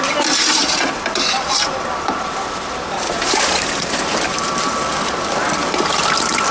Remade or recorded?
remade